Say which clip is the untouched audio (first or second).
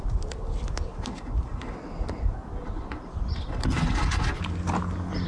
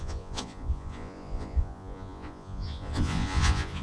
first